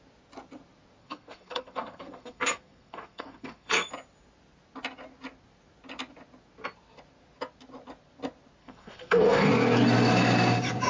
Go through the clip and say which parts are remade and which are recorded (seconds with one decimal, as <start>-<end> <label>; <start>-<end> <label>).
0.0-1.0 recorded; 1.0-3.9 remade; 3.9-8.6 recorded; 8.6-9.5 remade; 9.5-10.9 recorded